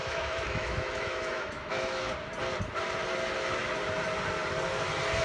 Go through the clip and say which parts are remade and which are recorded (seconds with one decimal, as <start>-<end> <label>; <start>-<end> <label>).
0.0-2.1 remade; 2.1-5.2 recorded